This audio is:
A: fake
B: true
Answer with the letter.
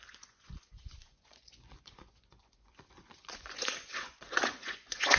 A